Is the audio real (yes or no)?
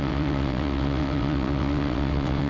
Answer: no